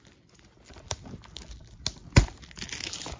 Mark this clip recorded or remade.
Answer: recorded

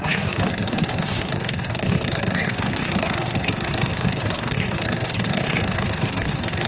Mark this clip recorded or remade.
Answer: remade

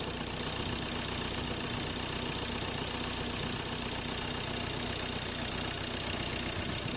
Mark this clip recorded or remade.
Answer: recorded